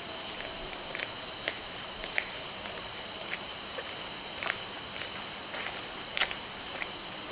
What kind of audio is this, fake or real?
fake